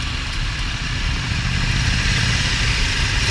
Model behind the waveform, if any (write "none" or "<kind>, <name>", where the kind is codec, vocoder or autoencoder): none